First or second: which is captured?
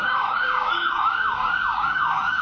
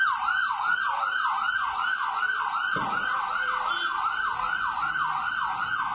second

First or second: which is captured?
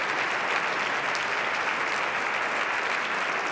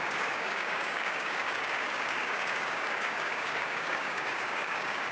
first